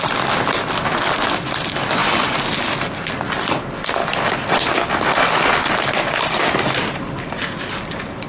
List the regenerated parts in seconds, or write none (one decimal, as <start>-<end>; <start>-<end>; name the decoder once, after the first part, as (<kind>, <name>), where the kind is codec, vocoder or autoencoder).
none